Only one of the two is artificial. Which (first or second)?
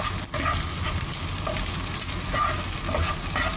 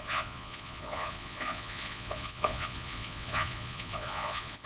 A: second